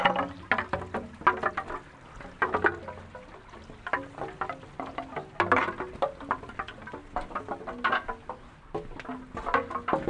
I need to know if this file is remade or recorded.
recorded